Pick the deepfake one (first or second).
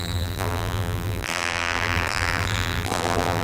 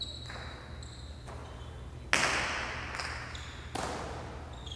first